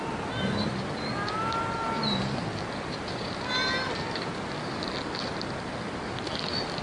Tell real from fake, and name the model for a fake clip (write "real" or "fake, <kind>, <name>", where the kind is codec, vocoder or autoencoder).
real